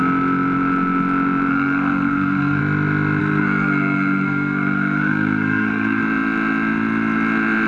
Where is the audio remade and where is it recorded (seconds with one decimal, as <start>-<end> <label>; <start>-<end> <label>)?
0.0-1.5 recorded; 1.5-2.6 remade; 2.6-3.2 recorded; 3.2-6.0 remade; 6.0-7.7 recorded